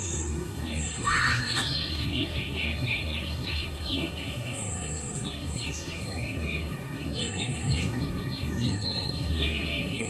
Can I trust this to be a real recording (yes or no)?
no